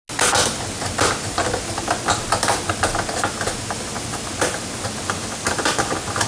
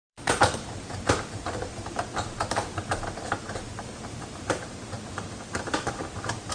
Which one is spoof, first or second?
second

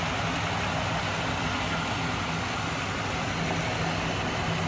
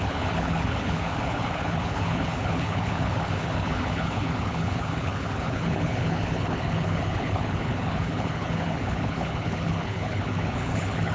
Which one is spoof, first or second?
second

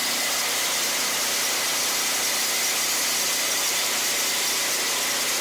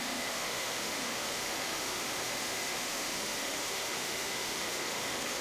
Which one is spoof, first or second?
second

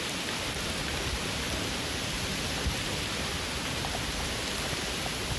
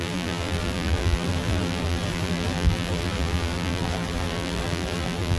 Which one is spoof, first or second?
second